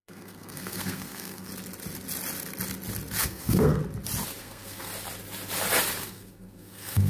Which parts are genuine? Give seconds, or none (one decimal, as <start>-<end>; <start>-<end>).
1.5-3.2; 3.8-4.4; 4.9-6.0